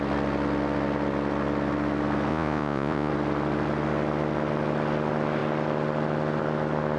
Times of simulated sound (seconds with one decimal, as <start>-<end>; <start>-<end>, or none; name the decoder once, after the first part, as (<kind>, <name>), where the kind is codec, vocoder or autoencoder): 2.3-3.1 (vocoder, Vocos)